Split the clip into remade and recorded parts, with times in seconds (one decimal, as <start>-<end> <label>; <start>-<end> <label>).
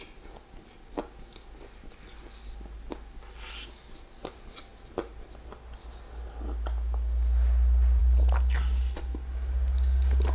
0.0-10.3 recorded